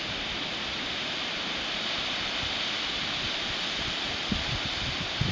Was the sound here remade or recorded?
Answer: recorded